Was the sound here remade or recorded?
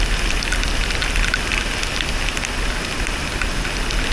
recorded